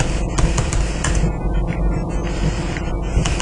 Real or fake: real